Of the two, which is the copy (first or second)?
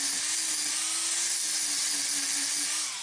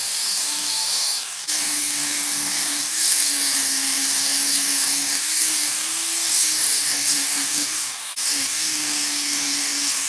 second